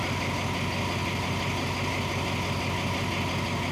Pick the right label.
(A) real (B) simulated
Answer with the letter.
A